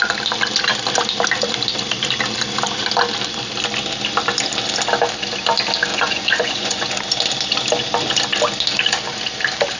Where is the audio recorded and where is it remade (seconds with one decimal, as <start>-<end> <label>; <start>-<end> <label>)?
0.0-5.9 recorded; 5.9-6.8 remade; 6.8-9.8 recorded